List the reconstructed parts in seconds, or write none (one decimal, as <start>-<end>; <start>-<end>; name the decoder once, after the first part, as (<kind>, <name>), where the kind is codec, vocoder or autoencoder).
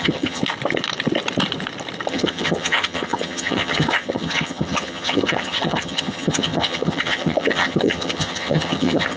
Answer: 0.0-0.4 (vocoder, HiFi-GAN); 2.1-9.2